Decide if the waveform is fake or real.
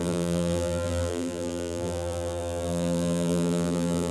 fake